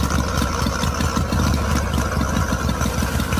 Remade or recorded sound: recorded